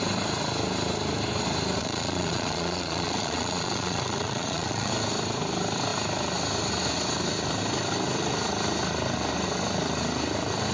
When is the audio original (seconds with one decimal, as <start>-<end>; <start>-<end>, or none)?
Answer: 0.0-1.8; 4.9-10.7